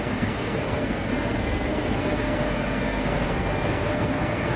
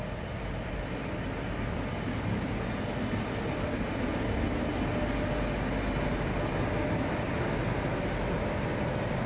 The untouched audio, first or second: second